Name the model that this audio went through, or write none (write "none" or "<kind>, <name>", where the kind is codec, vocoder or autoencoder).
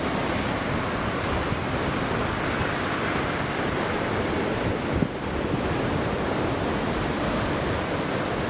none